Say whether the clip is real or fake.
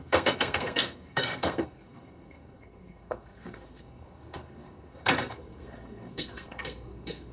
fake